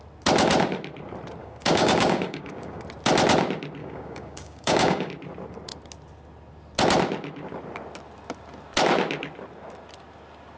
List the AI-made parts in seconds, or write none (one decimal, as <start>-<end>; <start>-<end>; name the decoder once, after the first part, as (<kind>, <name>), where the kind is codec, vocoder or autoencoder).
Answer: 1.4-2.8 (codec, DAC); 3.8-5.1